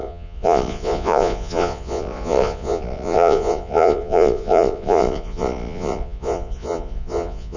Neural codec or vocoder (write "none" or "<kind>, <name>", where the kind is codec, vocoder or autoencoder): vocoder, Vocos